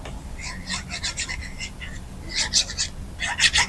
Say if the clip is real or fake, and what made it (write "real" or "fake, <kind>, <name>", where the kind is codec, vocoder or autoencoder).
real